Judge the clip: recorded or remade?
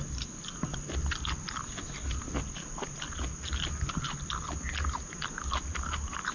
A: recorded